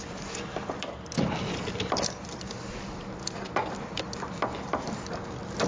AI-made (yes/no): yes